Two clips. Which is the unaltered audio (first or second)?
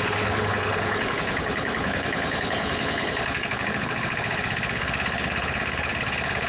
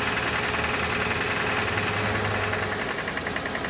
second